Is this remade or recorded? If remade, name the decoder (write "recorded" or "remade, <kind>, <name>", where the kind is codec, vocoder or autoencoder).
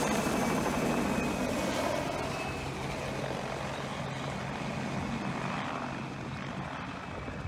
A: recorded